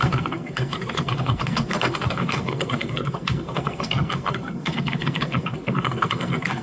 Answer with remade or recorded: remade